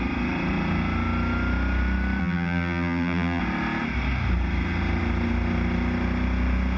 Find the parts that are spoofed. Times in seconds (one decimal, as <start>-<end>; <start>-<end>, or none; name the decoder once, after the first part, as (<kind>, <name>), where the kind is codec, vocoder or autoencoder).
2.2-3.4 (vocoder, BigVGAN v2)